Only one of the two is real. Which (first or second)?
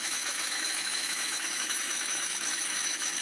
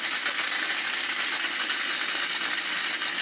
second